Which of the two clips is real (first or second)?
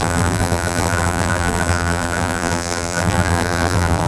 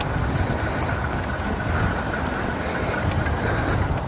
second